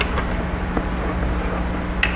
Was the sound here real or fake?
real